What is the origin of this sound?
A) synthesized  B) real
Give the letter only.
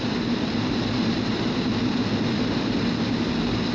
B